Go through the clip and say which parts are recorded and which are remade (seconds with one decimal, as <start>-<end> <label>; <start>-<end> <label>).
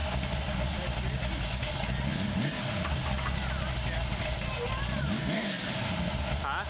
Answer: 0.0-6.7 recorded